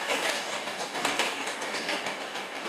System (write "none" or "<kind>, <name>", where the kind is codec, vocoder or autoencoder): codec, DAC